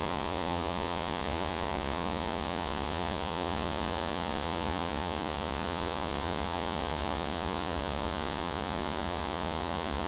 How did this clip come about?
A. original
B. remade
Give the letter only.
B